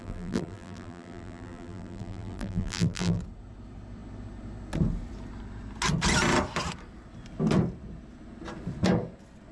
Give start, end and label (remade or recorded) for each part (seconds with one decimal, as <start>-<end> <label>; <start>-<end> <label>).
0.0-3.2 remade; 3.2-9.5 recorded

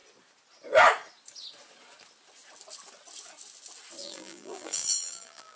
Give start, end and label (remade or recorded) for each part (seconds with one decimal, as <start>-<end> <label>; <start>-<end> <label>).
0.0-4.0 recorded; 4.0-5.6 remade

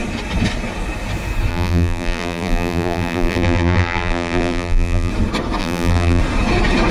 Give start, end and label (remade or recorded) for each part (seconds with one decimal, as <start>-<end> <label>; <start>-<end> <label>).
0.0-1.5 recorded; 1.5-5.1 remade; 5.1-5.6 recorded; 5.6-6.2 remade; 6.2-6.9 recorded

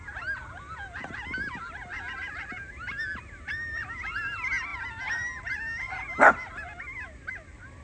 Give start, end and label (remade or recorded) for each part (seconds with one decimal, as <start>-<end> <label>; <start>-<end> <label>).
0.0-6.5 recorded; 6.5-7.3 remade; 7.3-7.8 recorded

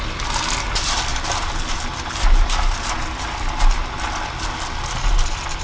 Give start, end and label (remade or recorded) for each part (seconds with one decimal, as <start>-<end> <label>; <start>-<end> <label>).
0.0-1.1 recorded; 1.1-3.4 remade; 3.4-5.6 recorded

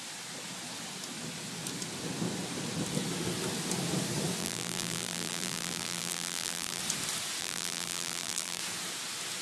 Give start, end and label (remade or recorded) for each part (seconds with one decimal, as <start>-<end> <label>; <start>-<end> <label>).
0.0-4.4 recorded; 4.4-6.8 remade; 6.8-7.4 recorded; 7.4-8.6 remade; 8.6-9.4 recorded

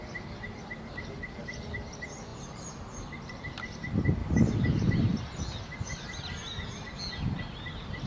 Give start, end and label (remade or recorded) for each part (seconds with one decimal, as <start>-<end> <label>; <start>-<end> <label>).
0.0-2.3 recorded; 2.3-3.3 remade; 3.3-4.2 recorded; 4.2-5.0 remade; 5.0-8.1 recorded